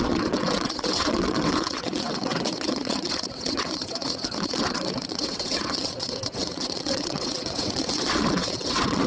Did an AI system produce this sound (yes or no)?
yes